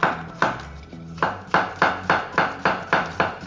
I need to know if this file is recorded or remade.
recorded